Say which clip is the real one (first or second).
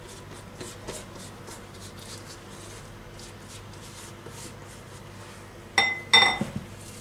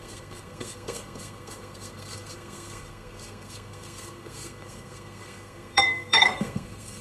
first